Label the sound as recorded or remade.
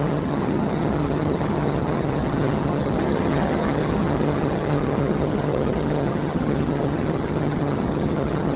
remade